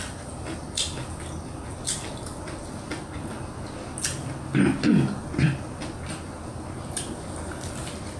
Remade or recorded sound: recorded